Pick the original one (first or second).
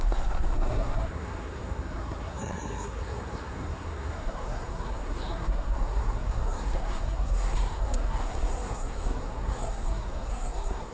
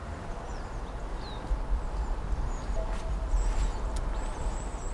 second